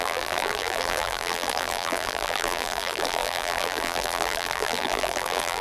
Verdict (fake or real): fake